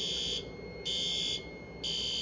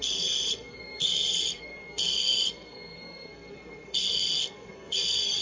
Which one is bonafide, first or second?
first